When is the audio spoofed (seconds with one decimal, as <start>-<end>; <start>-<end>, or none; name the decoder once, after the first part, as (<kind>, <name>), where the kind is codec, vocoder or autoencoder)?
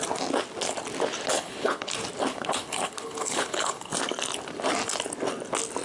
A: 1.3-1.9 (codec, HILCodec); 2.3-3.9